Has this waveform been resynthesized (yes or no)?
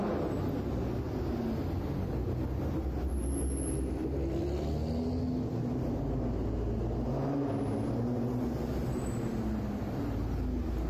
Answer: no